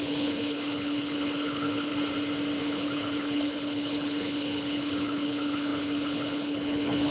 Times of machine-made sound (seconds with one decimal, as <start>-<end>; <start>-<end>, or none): 0.0-1.9; 2.6-7.1